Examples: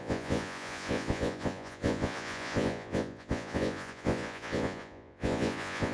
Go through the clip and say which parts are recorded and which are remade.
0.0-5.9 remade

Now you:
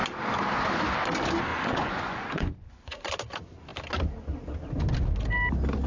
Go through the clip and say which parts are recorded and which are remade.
0.0-1.5 recorded; 1.5-3.1 remade; 3.1-5.9 recorded

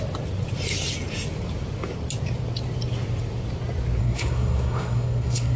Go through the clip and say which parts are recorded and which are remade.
0.0-4.0 recorded; 4.0-5.6 remade

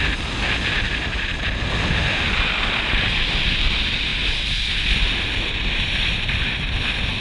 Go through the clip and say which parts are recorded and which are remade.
0.0-7.2 recorded

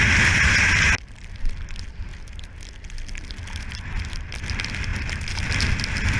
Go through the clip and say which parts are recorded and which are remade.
0.0-6.2 recorded

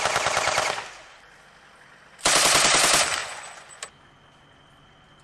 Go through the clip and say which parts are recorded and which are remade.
0.0-3.2 recorded; 3.2-3.8 remade; 3.8-5.2 recorded

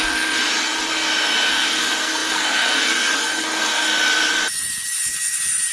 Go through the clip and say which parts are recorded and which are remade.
0.0-0.4 remade; 0.4-1.5 recorded; 1.5-3.9 remade; 3.9-5.7 recorded